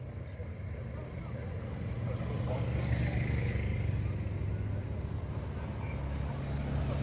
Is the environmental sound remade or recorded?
recorded